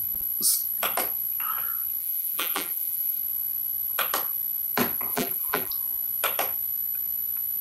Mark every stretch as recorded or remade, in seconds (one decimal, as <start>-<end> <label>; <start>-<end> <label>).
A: 0.0-2.0 recorded; 2.0-3.2 remade; 3.2-5.1 recorded; 5.1-5.7 remade; 5.7-7.6 recorded